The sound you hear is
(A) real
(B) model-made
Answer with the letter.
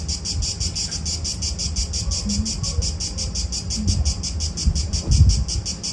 A